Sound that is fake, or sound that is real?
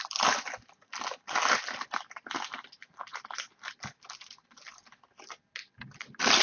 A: real